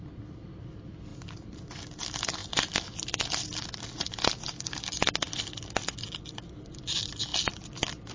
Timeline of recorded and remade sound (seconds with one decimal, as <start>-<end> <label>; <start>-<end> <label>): 0.0-8.1 recorded